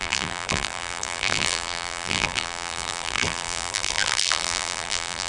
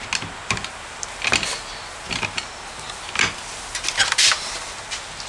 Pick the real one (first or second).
second